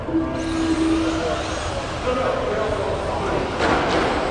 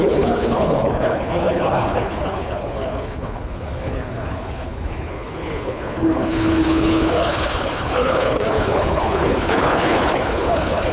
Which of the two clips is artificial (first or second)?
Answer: second